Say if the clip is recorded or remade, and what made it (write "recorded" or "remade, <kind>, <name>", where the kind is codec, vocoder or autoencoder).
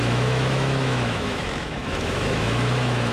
remade, autoencoder, DAC-VAE